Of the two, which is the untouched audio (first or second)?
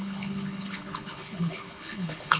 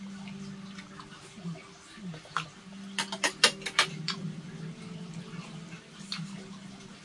second